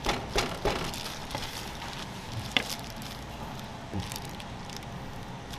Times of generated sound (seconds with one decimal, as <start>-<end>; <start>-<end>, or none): 1.2-3.1; 3.7-4.6